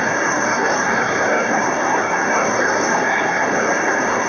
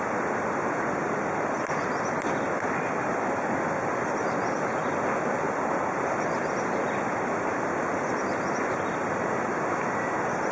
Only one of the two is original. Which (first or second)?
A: second